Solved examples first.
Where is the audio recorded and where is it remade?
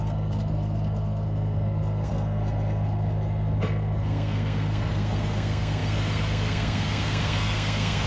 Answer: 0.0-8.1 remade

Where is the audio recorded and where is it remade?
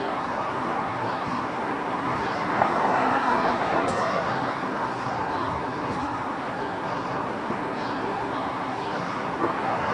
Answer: 0.0-9.9 remade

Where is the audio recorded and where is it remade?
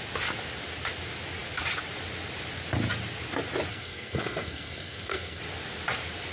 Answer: 0.0-3.7 recorded; 3.7-5.4 remade; 5.4-6.3 recorded